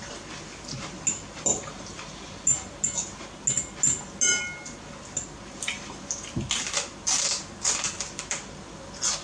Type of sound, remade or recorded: recorded